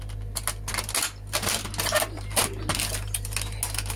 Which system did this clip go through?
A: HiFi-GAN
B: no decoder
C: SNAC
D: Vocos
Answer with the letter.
B